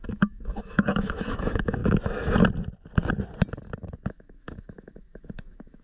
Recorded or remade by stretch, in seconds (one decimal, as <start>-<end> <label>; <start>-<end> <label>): 0.0-1.8 remade; 1.8-4.1 recorded; 4.1-5.8 remade